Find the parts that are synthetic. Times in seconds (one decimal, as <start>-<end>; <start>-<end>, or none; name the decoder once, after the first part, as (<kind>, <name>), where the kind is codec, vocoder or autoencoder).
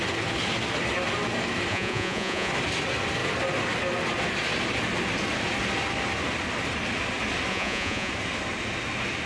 1.7-2.5 (vocoder, Vocos); 7.5-8.1